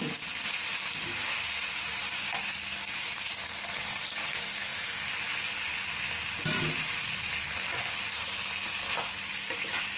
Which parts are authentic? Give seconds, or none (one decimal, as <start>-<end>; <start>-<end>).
0.0-10.0